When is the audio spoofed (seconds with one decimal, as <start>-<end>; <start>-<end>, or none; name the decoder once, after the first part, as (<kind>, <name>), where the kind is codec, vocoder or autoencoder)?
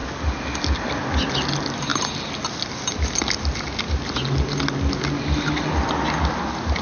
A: none